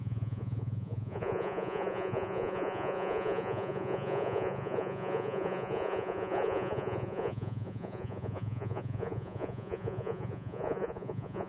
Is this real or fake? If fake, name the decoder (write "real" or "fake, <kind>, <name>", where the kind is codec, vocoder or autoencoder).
fake, vocoder, Vocos